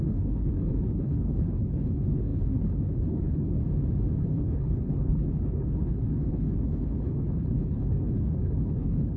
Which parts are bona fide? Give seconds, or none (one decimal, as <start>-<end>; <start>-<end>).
3.6-4.2